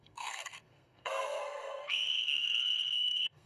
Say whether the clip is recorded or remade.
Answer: remade